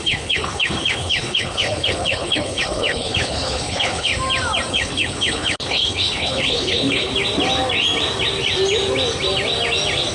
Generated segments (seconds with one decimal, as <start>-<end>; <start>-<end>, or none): 0.0-4.1; 4.7-7.1